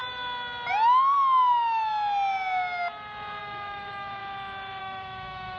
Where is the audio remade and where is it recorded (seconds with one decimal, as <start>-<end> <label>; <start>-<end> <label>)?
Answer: 0.0-3.4 recorded; 3.4-4.2 remade; 4.2-4.8 recorded; 4.8-5.6 remade

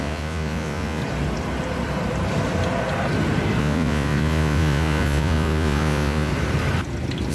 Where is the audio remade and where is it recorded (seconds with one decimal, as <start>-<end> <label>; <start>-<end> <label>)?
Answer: 0.0-1.0 remade; 1.0-3.6 recorded; 3.6-6.3 remade; 6.3-7.3 recorded

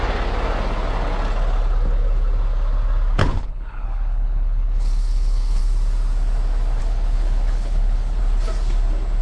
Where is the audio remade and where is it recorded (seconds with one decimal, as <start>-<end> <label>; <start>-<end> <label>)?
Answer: 0.0-3.2 recorded; 3.2-5.6 remade; 5.6-6.8 recorded; 6.8-8.2 remade; 8.2-9.2 recorded

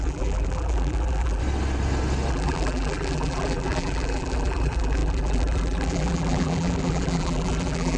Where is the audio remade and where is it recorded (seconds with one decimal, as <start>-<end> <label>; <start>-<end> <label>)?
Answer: 0.0-1.4 remade; 1.4-2.3 recorded; 2.3-8.0 remade